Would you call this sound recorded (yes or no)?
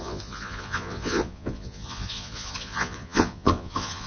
no